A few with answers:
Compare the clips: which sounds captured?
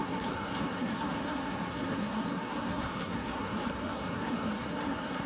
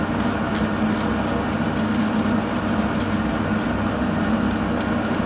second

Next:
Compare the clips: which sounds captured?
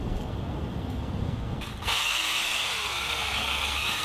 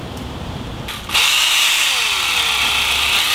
second